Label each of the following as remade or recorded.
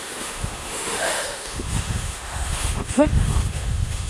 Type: remade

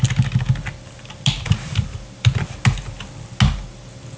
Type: recorded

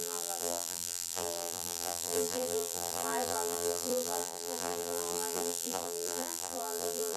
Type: remade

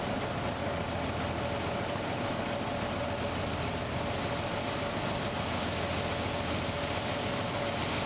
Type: recorded